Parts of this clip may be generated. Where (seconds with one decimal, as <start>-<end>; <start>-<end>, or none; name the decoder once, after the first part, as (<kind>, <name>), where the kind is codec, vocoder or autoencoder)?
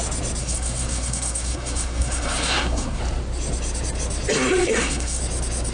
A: 0.4-3.0 (codec, SNAC); 4.6-5.2